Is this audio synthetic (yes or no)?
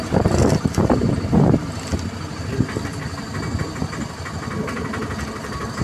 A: no